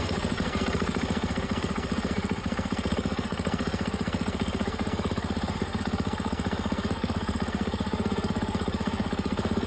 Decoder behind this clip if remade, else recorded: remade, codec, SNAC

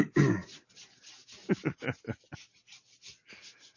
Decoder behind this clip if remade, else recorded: recorded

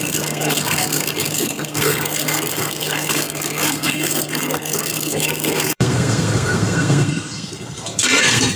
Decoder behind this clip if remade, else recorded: remade, codec, SNAC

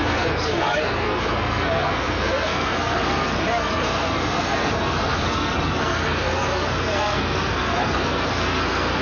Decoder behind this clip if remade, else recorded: remade, codec, SNAC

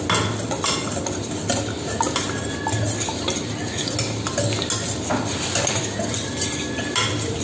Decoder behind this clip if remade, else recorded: recorded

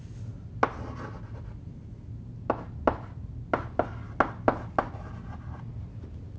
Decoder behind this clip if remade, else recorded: recorded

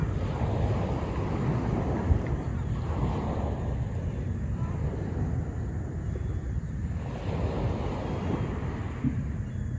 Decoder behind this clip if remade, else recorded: recorded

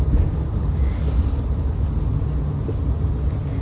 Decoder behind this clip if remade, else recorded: recorded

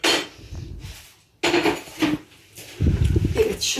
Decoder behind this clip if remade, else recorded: recorded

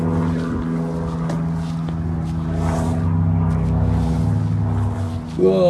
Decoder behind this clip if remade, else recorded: recorded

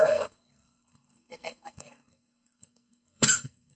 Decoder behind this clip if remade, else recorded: remade, codec, SNAC